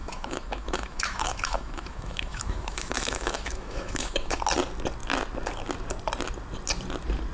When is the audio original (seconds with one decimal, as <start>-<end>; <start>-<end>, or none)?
4.4-7.3